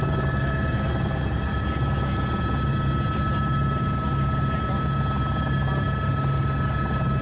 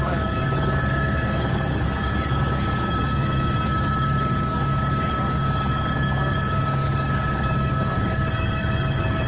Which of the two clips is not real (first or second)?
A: second